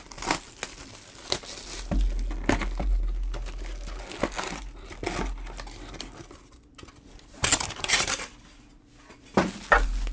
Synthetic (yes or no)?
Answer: no